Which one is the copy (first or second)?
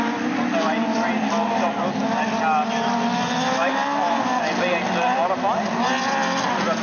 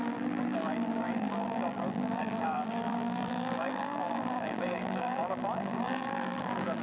second